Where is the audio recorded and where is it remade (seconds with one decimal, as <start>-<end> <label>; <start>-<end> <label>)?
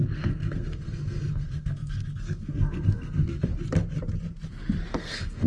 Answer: 0.0-3.5 remade; 3.5-4.9 recorded; 4.9-5.5 remade